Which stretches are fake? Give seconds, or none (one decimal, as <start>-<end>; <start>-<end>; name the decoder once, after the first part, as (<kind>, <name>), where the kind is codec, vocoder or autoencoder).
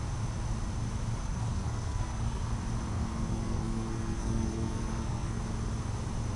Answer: 1.2-2.5 (codec, SNAC); 2.9-5.4